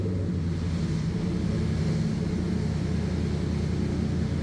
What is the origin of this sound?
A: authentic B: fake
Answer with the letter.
A